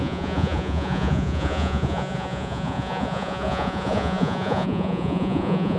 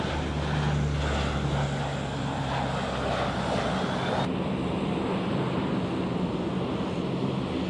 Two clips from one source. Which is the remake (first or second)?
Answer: first